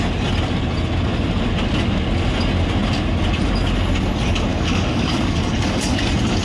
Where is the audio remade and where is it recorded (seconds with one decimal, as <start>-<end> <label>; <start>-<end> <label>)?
0.0-4.5 recorded; 4.5-6.0 remade; 6.0-6.4 recorded